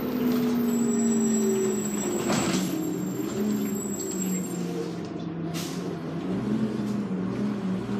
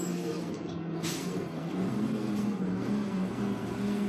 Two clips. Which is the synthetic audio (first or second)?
second